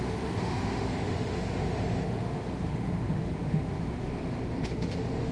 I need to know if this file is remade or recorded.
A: remade